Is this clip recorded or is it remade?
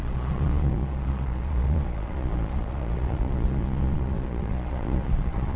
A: remade